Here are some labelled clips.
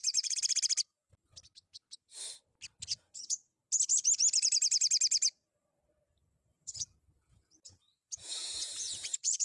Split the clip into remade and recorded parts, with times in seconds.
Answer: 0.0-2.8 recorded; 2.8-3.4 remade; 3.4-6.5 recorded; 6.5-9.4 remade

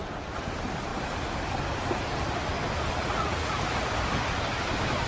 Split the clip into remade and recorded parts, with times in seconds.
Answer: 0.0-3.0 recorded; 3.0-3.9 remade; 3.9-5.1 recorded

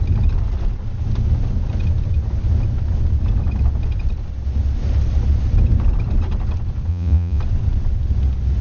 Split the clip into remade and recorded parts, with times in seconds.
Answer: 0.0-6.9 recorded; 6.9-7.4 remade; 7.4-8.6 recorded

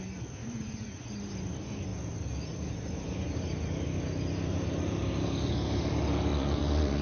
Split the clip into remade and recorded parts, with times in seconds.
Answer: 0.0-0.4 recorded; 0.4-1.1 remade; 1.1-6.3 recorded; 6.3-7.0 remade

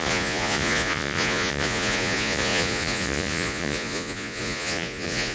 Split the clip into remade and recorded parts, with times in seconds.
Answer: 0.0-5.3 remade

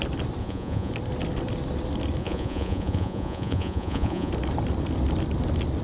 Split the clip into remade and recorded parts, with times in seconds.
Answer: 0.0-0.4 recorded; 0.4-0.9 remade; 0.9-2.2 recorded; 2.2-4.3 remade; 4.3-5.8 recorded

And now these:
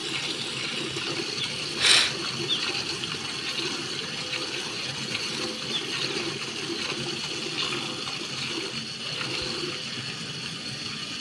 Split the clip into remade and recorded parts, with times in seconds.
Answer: 0.0-4.7 recorded; 4.7-5.3 remade; 5.3-10.5 recorded; 10.5-11.2 remade